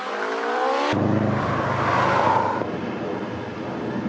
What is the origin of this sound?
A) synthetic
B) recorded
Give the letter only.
B